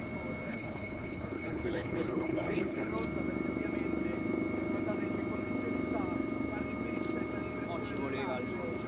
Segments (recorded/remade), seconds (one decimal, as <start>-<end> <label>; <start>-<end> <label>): 0.0-0.5 recorded; 0.5-2.9 remade; 2.9-8.9 recorded